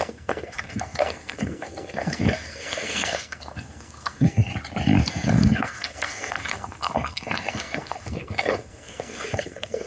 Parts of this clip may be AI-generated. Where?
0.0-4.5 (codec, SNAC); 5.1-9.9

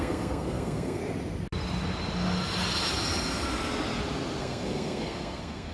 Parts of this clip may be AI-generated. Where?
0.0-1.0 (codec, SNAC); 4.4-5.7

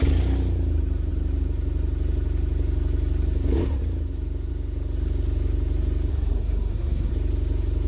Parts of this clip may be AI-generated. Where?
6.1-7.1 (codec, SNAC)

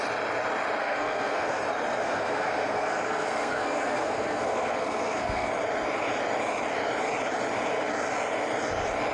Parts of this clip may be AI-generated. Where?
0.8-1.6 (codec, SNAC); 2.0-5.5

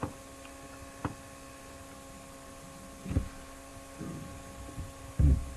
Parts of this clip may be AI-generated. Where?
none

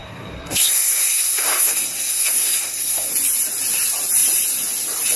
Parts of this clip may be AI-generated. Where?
0.0-3.1 (codec, SNAC)

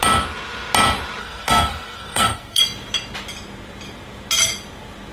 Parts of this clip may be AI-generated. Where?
1.2-2.6 (codec, SNAC)